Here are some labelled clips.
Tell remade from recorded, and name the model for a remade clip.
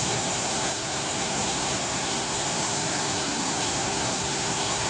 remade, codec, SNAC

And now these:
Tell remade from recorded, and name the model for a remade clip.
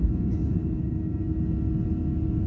recorded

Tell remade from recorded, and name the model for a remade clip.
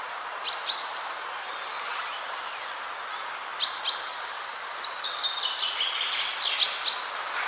recorded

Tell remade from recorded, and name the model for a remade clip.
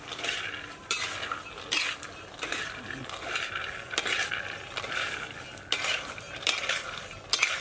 remade, vocoder, BigVGAN v2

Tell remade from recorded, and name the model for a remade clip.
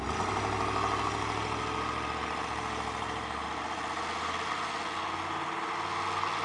recorded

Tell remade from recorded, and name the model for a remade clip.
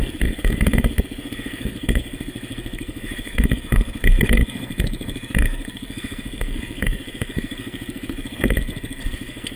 remade, codec, SNAC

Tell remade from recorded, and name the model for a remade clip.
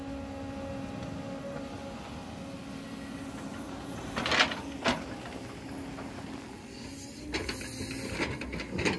recorded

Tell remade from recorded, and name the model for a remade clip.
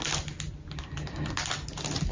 recorded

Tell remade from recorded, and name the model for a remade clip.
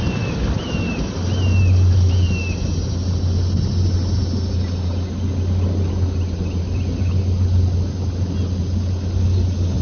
recorded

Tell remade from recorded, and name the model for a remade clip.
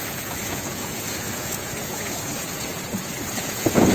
remade, vocoder, Vocos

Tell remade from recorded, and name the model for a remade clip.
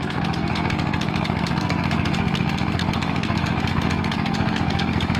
remade, codec, SNAC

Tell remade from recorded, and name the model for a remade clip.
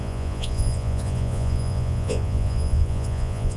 remade, vocoder, Vocos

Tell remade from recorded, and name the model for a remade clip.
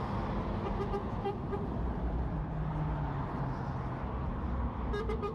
recorded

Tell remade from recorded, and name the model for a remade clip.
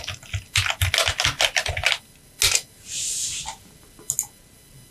recorded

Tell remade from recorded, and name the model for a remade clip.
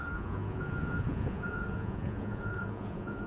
remade, vocoder, Vocos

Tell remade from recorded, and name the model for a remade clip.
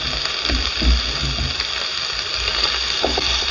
recorded